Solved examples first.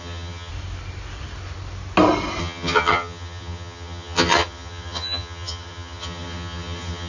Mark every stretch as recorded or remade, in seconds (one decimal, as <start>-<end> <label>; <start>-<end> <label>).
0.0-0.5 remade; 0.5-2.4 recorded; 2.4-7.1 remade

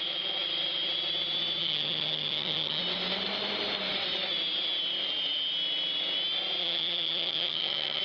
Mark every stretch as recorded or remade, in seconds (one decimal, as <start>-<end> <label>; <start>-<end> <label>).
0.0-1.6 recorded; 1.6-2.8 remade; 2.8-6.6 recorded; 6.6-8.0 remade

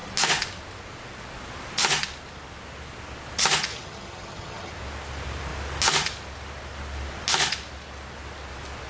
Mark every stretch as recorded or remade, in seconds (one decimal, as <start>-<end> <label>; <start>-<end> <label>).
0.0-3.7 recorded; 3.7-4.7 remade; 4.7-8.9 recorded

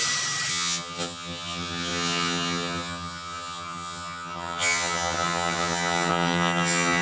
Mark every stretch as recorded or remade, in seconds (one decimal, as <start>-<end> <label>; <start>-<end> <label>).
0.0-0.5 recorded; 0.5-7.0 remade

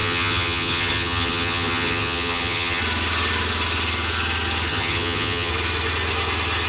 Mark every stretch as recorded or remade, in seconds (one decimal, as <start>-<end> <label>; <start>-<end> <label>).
0.0-2.8 remade; 2.8-4.7 recorded; 4.7-5.5 remade; 5.5-6.7 recorded